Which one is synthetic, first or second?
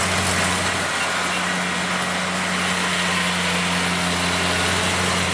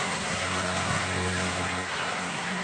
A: second